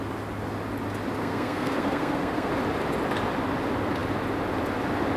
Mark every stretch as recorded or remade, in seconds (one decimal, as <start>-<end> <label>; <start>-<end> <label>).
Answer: 0.0-1.2 recorded; 1.2-2.5 remade; 2.5-5.2 recorded